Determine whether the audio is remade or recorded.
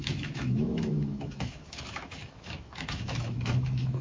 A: remade